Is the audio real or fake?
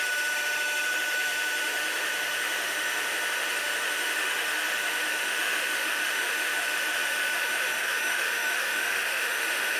fake